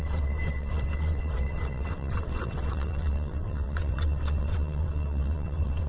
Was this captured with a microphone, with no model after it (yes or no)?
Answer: no